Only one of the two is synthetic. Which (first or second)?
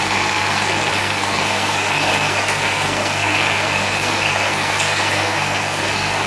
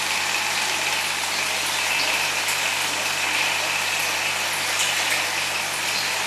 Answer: first